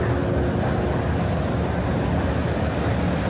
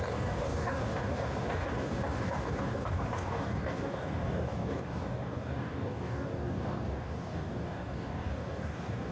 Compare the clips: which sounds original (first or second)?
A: first